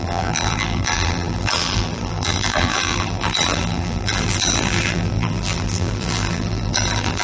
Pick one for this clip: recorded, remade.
remade